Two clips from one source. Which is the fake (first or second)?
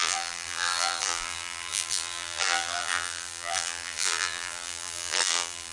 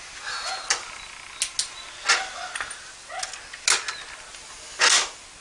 first